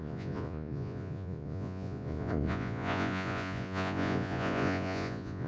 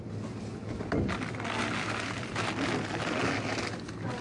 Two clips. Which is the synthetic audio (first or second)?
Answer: first